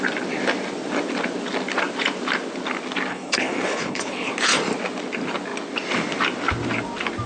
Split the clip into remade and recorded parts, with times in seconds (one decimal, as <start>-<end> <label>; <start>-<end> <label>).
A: 0.0-3.1 recorded; 3.1-4.3 remade; 4.3-7.3 recorded